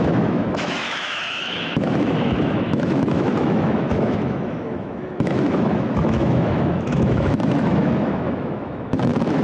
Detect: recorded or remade remade